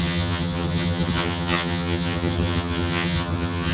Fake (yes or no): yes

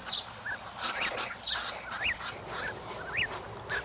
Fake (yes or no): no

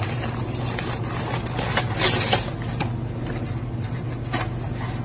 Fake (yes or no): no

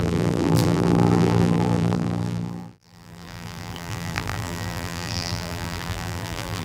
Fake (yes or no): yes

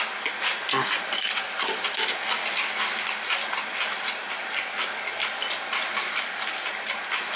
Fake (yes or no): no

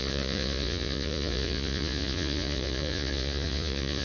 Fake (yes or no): yes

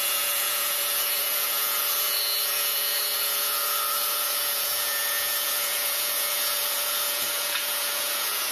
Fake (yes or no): yes